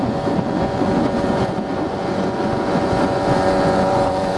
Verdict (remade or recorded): remade